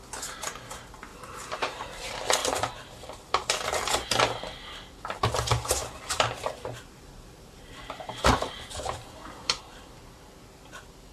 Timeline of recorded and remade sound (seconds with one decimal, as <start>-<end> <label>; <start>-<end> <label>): 0.0-1.1 recorded; 1.1-2.0 remade; 2.0-2.4 recorded; 2.4-3.0 remade; 3.0-5.8 recorded; 5.8-9.6 remade; 9.6-11.1 recorded